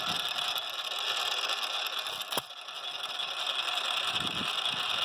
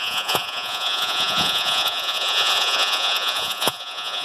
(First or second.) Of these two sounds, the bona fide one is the first